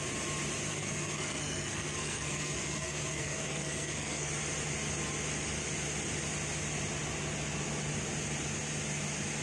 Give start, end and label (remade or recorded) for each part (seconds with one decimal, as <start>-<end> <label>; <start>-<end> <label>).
0.0-0.7 recorded; 0.7-4.3 remade; 4.3-9.4 recorded